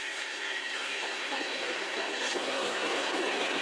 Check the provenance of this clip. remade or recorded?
remade